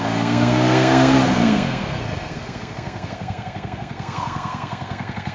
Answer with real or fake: fake